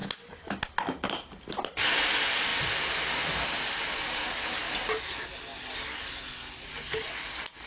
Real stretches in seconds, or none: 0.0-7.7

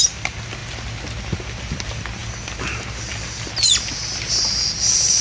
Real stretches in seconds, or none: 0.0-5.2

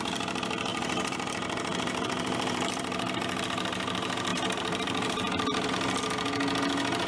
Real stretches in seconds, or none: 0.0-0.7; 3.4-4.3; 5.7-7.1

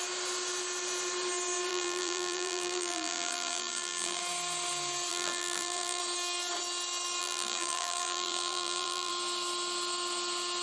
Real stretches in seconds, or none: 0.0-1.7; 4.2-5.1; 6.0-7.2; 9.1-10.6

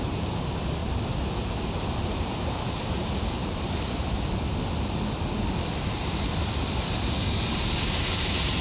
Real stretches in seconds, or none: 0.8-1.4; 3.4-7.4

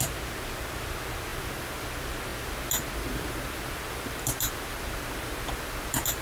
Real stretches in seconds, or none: 0.0-1.3; 1.9-2.3

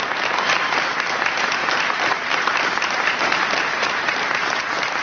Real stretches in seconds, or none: 0.0-1.6; 4.6-5.0